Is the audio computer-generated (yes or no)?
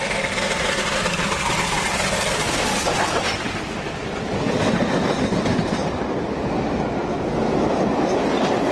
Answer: no